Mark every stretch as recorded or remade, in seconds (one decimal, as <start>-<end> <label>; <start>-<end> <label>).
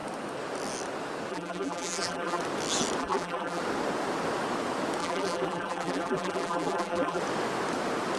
0.0-1.3 recorded; 1.3-2.4 remade; 2.4-3.0 recorded; 3.0-3.6 remade; 3.6-5.0 recorded; 5.0-7.2 remade; 7.2-8.2 recorded